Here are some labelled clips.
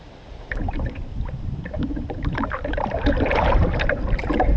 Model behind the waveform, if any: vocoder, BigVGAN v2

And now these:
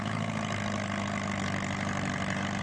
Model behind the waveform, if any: none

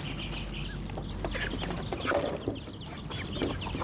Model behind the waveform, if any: none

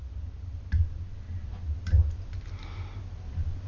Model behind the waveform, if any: none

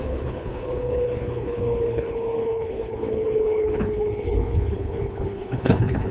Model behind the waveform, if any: codec, HILCodec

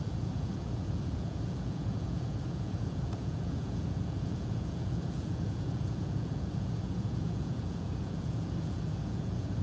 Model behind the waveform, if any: vocoder, Vocos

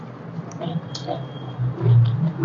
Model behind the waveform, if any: none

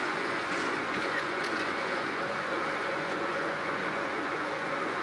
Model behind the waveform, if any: vocoder, Vocos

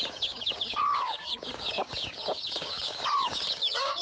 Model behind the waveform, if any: codec, DAC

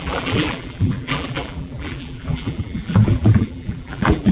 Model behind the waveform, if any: vocoder, BigVGAN v2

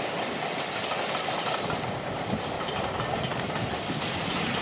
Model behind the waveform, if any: none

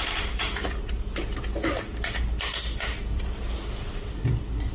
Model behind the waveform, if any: none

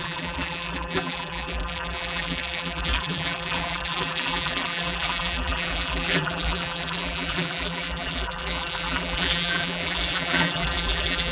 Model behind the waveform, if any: vocoder, BigVGAN v2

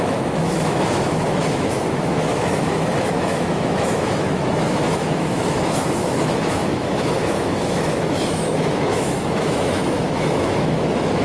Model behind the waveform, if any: autoencoder, DAC-VAE